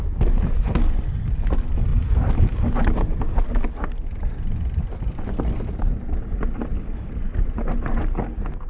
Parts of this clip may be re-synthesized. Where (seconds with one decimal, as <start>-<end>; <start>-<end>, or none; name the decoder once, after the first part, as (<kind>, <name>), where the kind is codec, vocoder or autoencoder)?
1.9-3.4 (vocoder, BigVGAN v2)